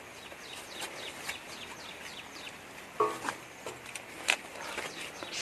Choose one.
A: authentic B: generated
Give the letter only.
A